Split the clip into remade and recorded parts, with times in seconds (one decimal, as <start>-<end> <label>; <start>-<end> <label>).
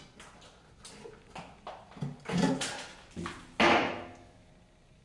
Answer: 0.0-3.8 recorded; 3.8-4.5 remade; 4.5-5.0 recorded